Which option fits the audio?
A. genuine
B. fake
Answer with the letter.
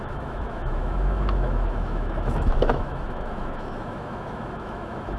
B